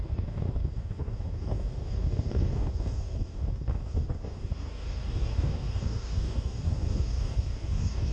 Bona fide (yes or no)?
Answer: no